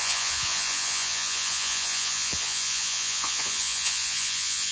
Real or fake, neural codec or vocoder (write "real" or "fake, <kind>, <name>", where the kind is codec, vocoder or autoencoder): fake, vocoder, Vocos